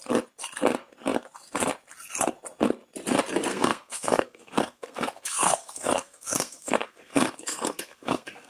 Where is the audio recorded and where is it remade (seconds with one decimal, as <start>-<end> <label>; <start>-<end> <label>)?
0.0-3.5 recorded; 3.5-8.5 remade